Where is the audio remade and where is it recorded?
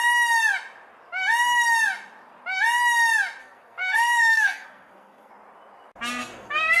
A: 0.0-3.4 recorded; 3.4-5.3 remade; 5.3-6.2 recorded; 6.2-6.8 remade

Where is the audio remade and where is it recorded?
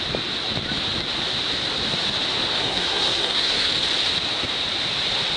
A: 0.0-2.6 recorded; 2.6-3.7 remade; 3.7-5.4 recorded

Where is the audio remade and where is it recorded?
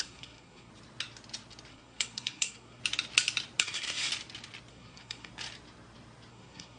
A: 0.0-0.7 remade; 0.7-1.7 recorded; 1.7-2.8 remade; 2.8-3.6 recorded; 3.6-4.1 remade; 4.1-4.7 recorded; 4.7-5.3 remade; 5.3-6.3 recorded; 6.3-6.8 remade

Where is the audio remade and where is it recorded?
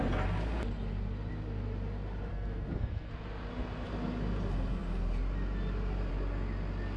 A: 0.0-2.3 recorded; 2.3-3.1 remade; 3.1-7.0 recorded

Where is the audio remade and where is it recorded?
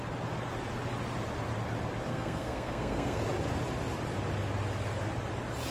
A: 0.0-2.1 recorded; 2.1-3.2 remade; 3.2-5.7 recorded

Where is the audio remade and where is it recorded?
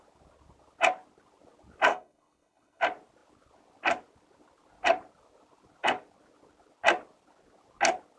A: 0.0-1.9 recorded; 1.9-2.8 remade; 2.8-8.2 recorded